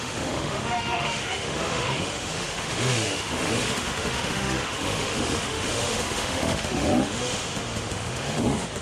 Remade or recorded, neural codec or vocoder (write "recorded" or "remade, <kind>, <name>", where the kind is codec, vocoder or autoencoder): remade, autoencoder, DAC-VAE